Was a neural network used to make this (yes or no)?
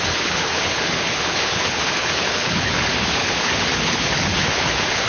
yes